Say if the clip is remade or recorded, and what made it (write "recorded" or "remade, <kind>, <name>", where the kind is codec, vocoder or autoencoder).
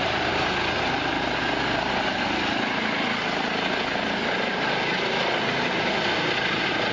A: recorded